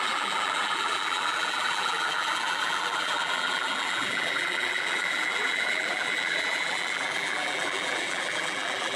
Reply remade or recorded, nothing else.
remade